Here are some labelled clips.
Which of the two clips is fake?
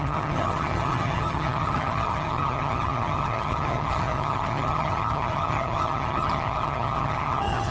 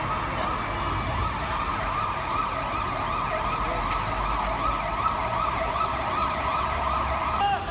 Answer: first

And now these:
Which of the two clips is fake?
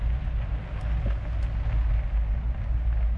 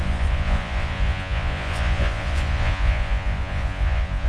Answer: second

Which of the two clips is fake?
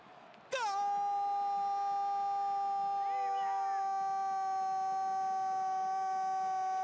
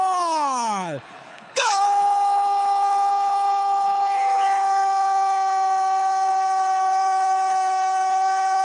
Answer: second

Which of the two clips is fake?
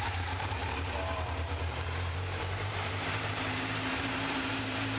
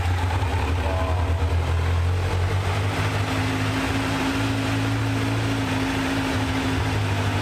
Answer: first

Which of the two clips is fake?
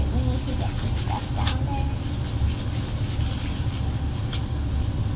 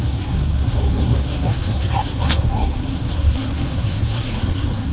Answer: second